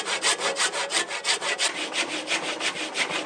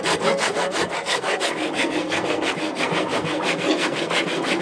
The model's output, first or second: second